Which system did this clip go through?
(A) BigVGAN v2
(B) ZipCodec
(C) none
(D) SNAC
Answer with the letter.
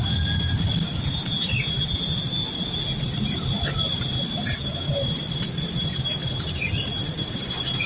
C